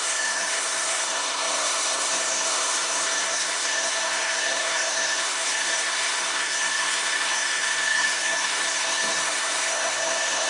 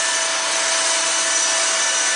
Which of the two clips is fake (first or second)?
first